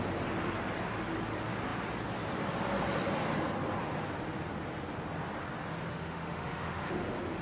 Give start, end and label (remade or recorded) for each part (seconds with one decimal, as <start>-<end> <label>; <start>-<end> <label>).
0.0-5.9 recorded; 5.9-6.9 remade; 6.9-7.4 recorded